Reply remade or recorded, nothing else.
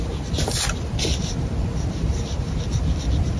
recorded